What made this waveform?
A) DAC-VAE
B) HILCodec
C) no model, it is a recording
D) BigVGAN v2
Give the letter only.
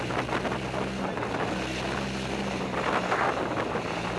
C